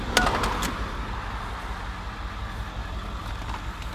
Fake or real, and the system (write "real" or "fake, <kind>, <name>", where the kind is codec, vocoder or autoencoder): real